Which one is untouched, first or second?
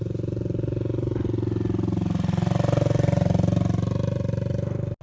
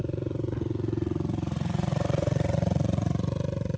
first